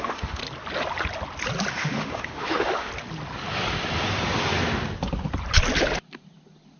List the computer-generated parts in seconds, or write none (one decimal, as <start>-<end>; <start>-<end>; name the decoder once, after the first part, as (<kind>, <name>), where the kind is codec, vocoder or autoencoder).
0.0-0.4 (autoencoder, DAC-VAE); 1.7-2.9